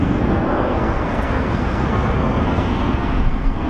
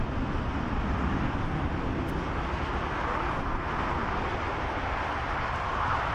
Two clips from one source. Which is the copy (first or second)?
first